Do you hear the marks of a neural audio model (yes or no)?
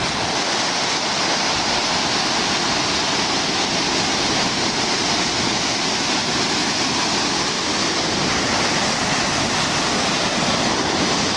no